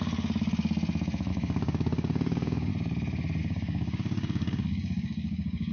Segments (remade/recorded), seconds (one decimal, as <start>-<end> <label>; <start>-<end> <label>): 0.0-1.3 recorded; 1.3-2.7 remade; 2.7-3.4 recorded; 3.4-5.7 remade